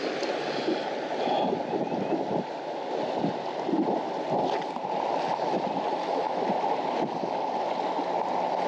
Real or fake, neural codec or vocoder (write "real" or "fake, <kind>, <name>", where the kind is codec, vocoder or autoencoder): real